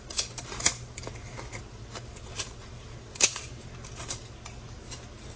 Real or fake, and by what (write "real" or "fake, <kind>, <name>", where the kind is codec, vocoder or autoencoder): fake, vocoder, BigVGAN v2